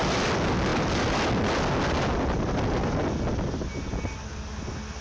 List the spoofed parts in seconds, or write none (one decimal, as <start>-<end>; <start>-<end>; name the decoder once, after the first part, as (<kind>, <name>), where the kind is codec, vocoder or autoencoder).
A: none